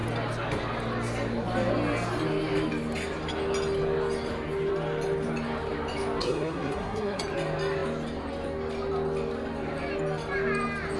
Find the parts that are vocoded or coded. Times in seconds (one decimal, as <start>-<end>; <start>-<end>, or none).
6.2-7.2